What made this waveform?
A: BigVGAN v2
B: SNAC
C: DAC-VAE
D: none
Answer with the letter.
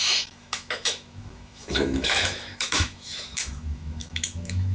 C